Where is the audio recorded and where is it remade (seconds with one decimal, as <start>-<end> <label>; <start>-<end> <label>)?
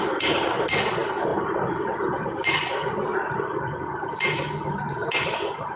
0.0-5.8 recorded